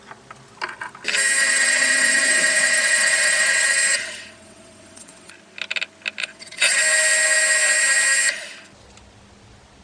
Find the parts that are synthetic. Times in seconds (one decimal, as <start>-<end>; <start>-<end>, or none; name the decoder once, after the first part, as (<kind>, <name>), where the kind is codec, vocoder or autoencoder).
1.4-5.3 (vocoder, WaveNeXt); 6.2-6.8